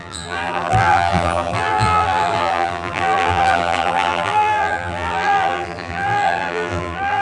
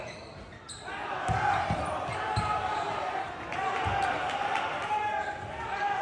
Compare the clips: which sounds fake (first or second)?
first